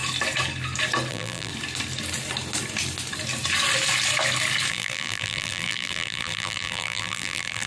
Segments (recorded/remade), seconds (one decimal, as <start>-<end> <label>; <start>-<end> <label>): 0.0-1.1 recorded; 1.1-1.5 remade; 1.5-4.7 recorded; 4.7-7.7 remade